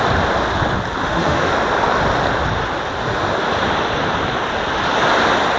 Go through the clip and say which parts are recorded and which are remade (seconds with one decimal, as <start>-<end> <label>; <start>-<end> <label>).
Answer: 0.0-1.0 recorded; 1.0-1.5 remade; 1.5-5.6 recorded